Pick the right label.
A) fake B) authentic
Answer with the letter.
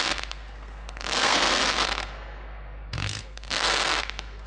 A